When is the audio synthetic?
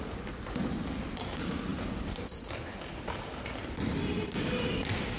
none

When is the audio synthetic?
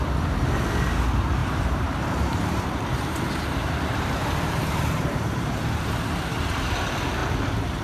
1.4-6.1 (vocoder, BigVGAN v2); 7.2-7.8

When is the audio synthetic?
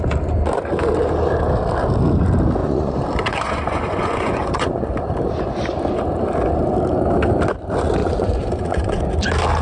2.6-4.9 (vocoder, Vocos); 8.0-9.0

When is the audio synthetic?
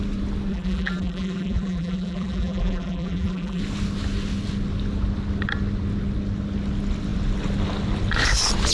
0.5-3.6 (vocoder, BigVGAN v2)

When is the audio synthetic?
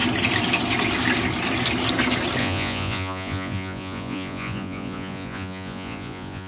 2.4-6.5 (vocoder, Vocos)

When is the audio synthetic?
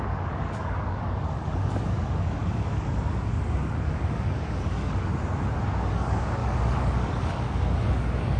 0.0-5.1 (codec, DAC); 5.7-8.4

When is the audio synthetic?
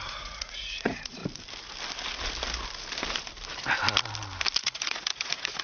0.0-1.2 (vocoder, Vocos); 4.6-5.6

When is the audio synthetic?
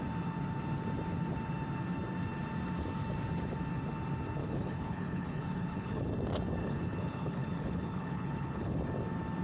4.4-6.1 (codec, HILCodec); 6.6-8.8